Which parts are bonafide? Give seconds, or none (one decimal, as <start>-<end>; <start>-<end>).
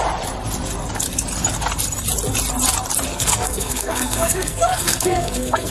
0.0-3.1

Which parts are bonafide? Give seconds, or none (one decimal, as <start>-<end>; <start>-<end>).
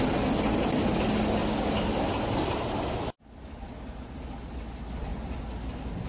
0.0-6.1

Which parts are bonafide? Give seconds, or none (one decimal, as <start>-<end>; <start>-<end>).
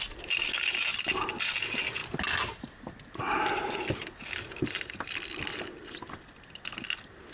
0.0-7.3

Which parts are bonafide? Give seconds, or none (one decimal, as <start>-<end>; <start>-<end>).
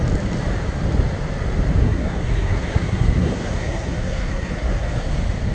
0.0-1.8; 5.1-5.5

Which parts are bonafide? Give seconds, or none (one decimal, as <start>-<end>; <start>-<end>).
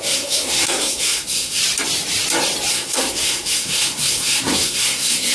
1.6-2.7